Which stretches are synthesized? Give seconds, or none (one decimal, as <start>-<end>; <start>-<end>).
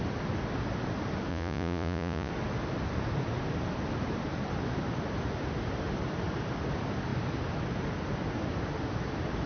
1.3-2.3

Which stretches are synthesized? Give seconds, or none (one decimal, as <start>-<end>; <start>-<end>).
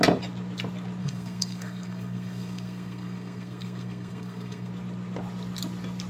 1.0-4.7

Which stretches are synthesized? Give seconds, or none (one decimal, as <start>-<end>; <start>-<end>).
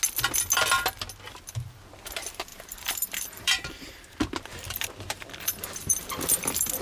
2.5-6.8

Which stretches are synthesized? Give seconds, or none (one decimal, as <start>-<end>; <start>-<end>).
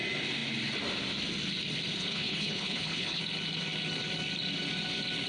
2.0-3.2